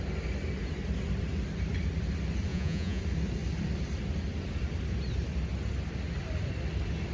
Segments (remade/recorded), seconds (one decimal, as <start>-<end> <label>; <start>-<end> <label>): 0.0-2.5 recorded; 2.5-3.0 remade; 3.0-7.1 recorded